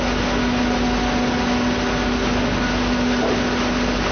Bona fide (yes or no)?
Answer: yes